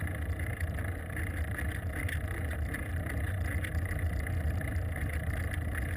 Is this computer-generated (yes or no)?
no